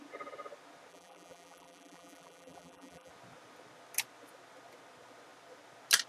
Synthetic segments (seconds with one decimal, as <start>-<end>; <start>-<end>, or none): 0.9-3.1